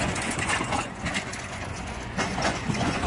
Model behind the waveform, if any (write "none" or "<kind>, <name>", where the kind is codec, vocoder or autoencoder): vocoder, Vocos